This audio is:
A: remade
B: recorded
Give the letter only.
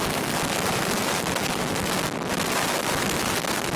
B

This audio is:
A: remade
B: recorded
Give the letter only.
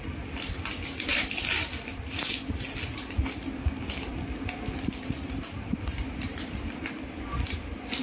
B